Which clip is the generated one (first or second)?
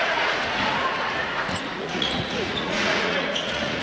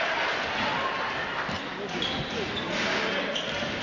first